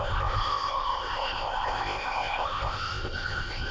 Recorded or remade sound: remade